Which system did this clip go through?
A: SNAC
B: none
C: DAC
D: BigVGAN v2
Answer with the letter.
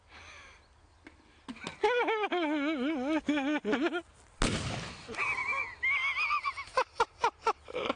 B